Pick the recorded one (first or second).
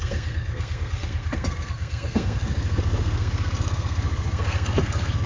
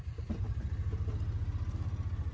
second